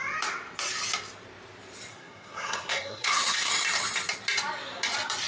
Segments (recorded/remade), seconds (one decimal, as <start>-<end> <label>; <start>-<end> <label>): 0.0-1.9 recorded; 1.9-3.5 remade; 3.5-5.3 recorded